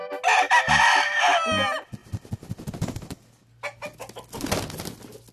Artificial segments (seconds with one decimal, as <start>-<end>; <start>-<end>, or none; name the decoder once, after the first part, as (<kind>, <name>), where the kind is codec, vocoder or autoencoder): none